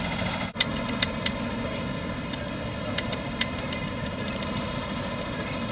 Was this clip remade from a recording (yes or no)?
no